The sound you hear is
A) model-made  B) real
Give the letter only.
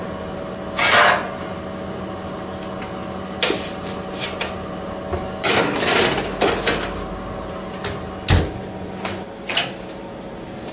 B